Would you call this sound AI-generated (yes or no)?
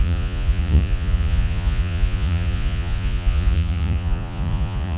yes